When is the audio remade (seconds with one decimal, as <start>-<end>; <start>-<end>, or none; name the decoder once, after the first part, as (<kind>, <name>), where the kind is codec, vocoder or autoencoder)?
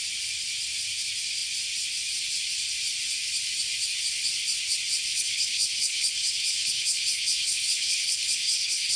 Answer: 5.1-9.0 (codec, HILCodec)